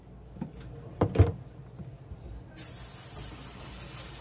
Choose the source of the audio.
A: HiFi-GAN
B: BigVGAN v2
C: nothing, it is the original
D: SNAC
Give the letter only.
C